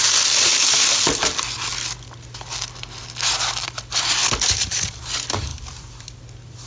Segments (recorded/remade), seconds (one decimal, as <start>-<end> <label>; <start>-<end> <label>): 0.0-0.5 recorded; 0.5-1.2 remade; 1.2-5.5 recorded; 5.5-6.2 remade; 6.2-6.7 recorded